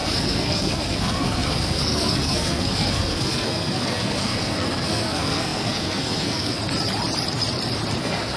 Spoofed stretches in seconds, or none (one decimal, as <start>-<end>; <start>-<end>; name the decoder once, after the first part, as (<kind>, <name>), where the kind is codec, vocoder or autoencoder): 0.0-6.6 (codec, SNAC); 8.0-8.4